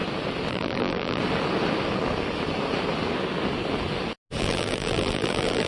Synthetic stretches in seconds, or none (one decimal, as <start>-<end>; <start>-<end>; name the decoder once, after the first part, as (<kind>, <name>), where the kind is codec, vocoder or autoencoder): 0.5-1.2 (vocoder, BigVGAN v2); 4.4-5.7